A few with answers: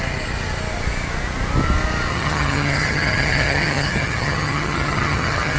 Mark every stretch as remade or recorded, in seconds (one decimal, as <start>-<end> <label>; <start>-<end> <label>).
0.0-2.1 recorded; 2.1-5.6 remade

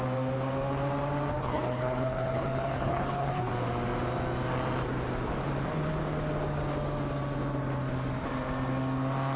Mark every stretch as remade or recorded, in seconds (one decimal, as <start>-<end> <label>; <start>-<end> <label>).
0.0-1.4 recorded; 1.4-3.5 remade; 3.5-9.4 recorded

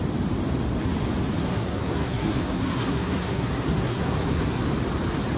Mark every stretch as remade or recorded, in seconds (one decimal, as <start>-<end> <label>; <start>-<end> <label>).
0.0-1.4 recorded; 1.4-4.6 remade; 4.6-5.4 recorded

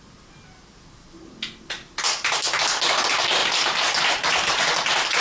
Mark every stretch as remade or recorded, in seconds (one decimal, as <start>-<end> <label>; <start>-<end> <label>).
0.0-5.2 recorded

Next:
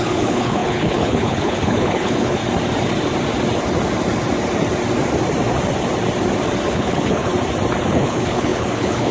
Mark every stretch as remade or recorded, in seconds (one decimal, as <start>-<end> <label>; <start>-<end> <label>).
0.0-2.4 remade; 2.4-6.7 recorded; 6.7-7.3 remade; 7.3-7.9 recorded; 7.9-9.1 remade